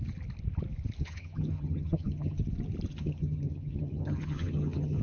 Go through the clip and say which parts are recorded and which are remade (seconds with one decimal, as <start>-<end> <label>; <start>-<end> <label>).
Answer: 0.0-1.0 recorded; 1.0-2.4 remade; 2.4-2.9 recorded; 2.9-5.0 remade